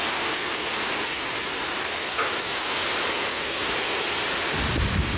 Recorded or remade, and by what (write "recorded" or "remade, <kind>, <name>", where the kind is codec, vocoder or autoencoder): recorded